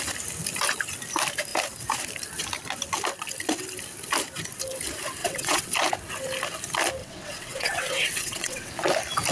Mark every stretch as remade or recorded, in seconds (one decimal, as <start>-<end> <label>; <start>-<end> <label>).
0.0-5.2 recorded; 5.2-5.7 remade; 5.7-7.0 recorded; 7.0-8.7 remade; 8.7-9.3 recorded